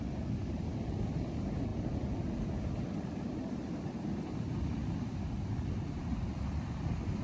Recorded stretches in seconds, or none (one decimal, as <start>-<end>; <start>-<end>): 0.0-7.2